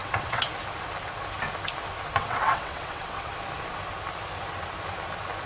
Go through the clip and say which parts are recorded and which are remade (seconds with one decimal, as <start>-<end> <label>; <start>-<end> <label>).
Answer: 0.0-0.5 remade; 0.5-2.2 recorded; 2.2-3.3 remade; 3.3-5.5 recorded